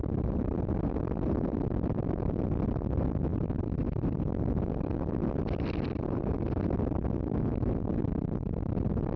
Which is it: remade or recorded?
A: recorded